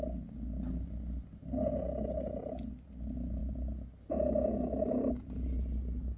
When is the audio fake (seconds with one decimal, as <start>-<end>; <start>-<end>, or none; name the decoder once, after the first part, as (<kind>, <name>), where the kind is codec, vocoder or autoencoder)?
none